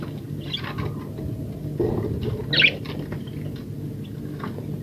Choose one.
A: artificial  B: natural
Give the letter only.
B